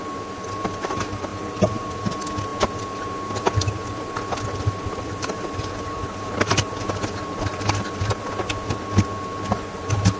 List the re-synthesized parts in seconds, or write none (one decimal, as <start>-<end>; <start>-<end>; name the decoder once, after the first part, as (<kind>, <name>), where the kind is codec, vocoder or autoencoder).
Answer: 1.3-1.9 (vocoder, BigVGAN v2); 2.5-7.6

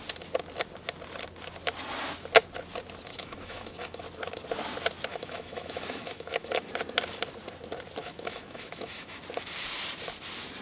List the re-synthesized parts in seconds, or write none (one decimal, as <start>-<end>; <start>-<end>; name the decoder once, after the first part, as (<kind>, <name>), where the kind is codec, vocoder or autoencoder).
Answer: 3.1-4.0 (autoencoder, DAC-VAE); 5.1-6.7; 8.0-9.2

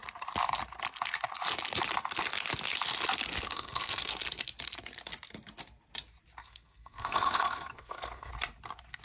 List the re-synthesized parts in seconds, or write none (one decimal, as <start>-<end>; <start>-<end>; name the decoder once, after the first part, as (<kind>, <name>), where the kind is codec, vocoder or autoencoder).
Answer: 3.5-4.1 (codec, SNAC); 6.4-8.3

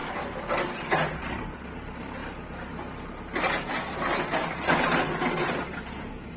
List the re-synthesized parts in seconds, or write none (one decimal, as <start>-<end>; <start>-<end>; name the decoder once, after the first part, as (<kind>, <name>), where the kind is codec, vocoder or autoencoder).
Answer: none

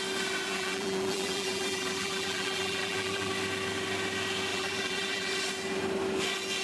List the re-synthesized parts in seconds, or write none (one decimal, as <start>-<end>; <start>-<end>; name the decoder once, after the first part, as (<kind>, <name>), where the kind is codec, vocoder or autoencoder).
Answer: 0.5-3.3 (vocoder, BigVGAN v2); 4.5-5.3

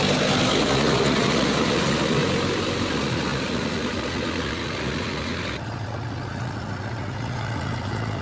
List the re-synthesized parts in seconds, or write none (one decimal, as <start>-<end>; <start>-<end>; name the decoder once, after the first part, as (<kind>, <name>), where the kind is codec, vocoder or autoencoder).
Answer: 0.6-2.2 (vocoder, Vocos); 2.9-8.2

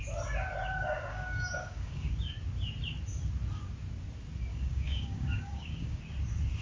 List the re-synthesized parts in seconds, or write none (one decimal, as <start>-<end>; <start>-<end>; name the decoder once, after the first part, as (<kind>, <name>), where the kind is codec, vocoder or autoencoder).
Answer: 1.1-2.1 (codec, DAC); 4.5-6.0